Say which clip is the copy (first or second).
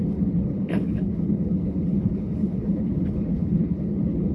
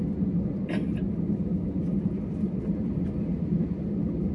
first